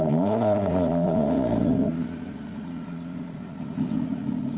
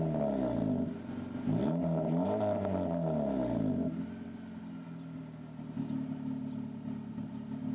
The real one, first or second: second